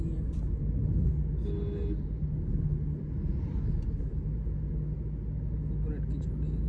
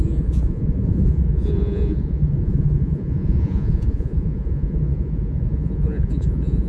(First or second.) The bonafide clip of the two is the first